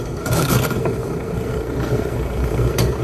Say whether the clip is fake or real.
fake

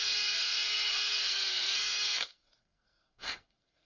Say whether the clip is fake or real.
fake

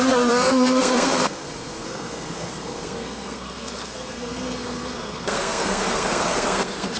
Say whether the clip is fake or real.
fake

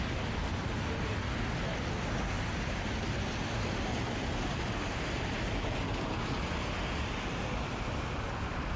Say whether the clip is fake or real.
real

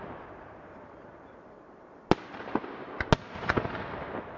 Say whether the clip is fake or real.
real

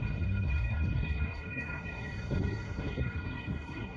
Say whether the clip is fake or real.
fake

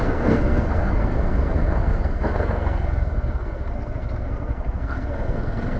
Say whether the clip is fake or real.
fake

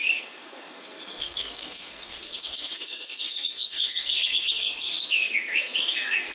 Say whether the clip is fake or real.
fake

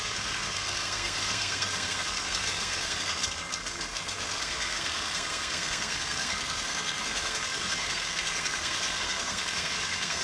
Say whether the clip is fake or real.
fake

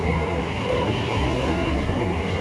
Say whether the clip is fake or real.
fake